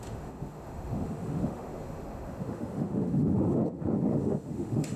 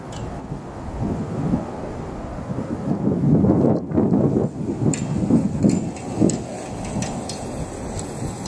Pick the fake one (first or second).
first